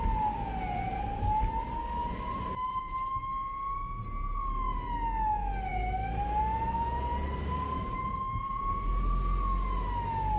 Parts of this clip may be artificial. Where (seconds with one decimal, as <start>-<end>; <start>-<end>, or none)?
2.0-2.8; 7.1-8.7